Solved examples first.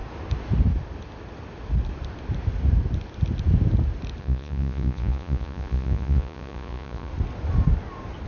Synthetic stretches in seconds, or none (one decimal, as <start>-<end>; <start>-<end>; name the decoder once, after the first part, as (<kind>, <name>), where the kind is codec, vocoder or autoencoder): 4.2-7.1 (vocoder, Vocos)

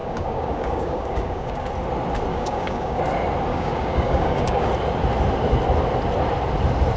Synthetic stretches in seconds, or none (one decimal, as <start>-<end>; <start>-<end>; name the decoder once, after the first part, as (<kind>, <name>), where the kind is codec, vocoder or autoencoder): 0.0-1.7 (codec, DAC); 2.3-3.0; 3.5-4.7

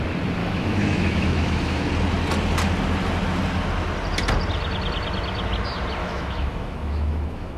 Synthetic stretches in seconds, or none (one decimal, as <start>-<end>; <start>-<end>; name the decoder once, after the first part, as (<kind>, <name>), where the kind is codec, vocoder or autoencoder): 0.4-1.9 (autoencoder, DAC-VAE); 6.0-7.6